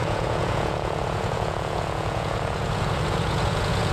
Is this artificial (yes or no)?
yes